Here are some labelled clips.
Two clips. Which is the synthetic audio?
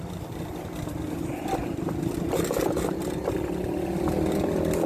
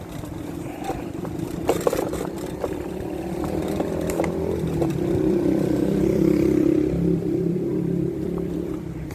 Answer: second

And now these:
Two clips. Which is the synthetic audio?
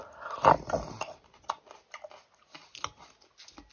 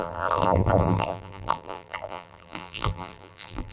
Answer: second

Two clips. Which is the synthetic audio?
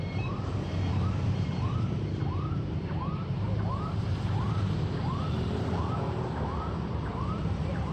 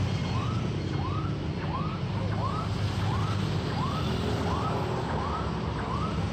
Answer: first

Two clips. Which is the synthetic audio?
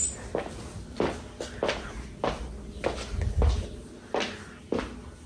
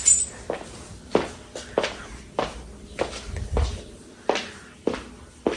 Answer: second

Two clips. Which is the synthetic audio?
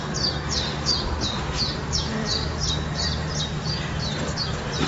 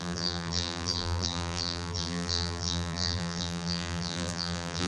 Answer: second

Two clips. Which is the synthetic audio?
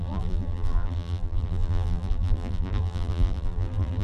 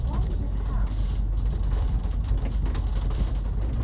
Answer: first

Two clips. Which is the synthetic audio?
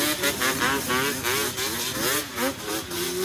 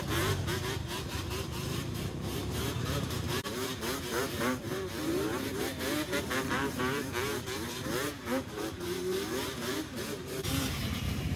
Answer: second